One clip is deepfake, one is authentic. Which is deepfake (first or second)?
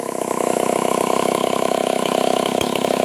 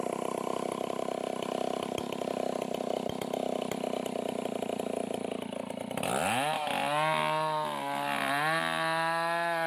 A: first